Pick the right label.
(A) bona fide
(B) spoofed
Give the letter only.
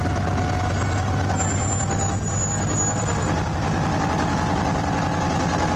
A